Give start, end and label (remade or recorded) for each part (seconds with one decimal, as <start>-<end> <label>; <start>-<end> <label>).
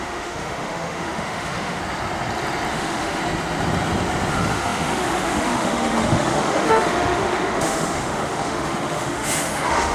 0.0-1.8 remade; 1.8-2.7 recorded; 2.7-3.2 remade; 3.2-4.3 recorded; 4.3-9.9 remade